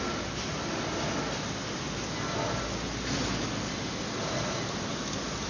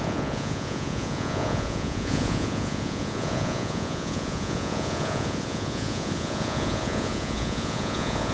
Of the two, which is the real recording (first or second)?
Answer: first